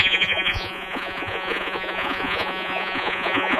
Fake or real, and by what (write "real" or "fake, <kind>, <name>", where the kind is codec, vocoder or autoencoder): fake, vocoder, Vocos